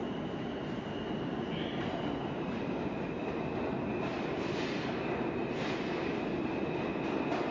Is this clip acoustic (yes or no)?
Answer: yes